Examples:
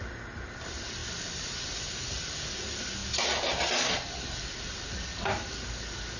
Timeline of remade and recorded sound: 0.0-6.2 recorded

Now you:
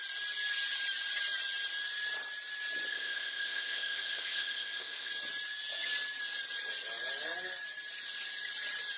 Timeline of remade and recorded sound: 0.0-2.9 recorded; 2.9-5.1 remade; 5.1-9.0 recorded

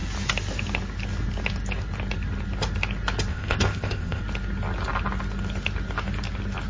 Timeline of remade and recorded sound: 0.0-3.3 recorded; 3.3-4.2 remade; 4.2-6.7 recorded

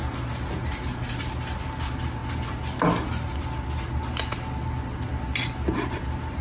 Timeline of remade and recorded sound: 0.0-6.4 recorded

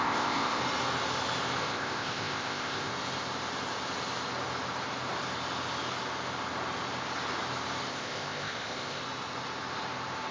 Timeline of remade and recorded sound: 0.0-0.6 remade; 0.6-1.6 recorded; 1.6-2.9 remade; 2.9-7.9 recorded; 7.9-9.0 remade; 9.0-10.3 recorded